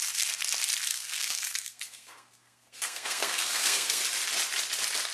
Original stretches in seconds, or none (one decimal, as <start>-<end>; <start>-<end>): 0.0-0.9; 4.0-5.1

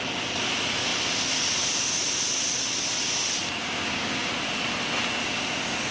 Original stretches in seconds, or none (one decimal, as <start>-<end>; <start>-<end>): 0.0-3.6; 4.3-5.9

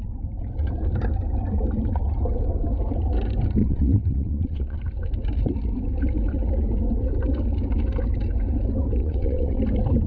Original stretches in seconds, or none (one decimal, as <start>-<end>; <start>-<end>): 0.0-3.6; 4.8-9.0; 9.6-10.1

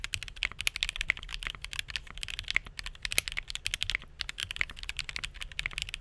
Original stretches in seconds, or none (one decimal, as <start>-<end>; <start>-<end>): 0.0-4.4; 5.1-6.0

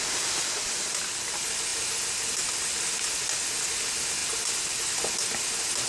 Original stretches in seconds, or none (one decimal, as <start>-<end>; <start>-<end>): 0.0-5.9